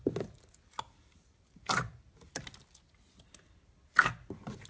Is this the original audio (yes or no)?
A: yes